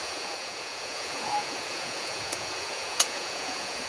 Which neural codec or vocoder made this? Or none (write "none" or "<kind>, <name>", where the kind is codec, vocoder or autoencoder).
vocoder, Vocos